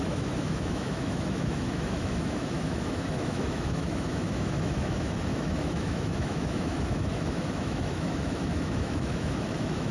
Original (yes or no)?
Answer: no